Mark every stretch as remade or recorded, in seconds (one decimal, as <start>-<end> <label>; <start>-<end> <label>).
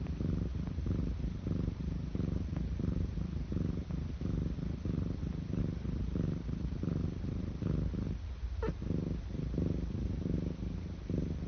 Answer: 0.0-11.5 recorded